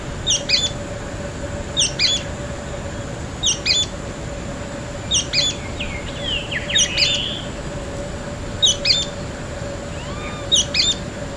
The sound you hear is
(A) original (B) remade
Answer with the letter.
A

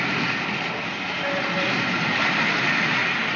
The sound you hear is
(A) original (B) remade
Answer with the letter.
A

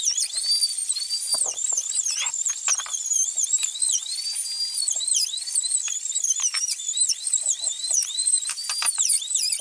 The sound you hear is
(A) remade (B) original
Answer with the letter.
B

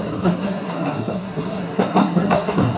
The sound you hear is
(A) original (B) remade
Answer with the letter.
B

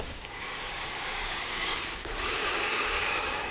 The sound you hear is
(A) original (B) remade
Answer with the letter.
B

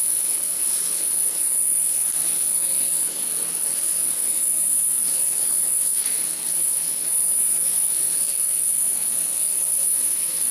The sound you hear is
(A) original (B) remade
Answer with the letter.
B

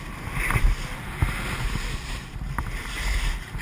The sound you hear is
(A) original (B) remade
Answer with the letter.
A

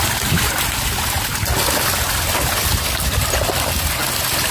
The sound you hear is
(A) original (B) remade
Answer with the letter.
A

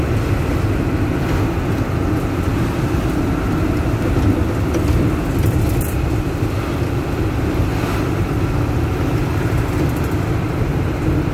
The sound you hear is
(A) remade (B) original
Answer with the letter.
B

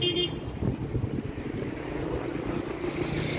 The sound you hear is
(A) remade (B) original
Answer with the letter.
B